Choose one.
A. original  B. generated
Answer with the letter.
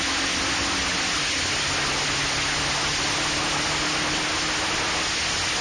A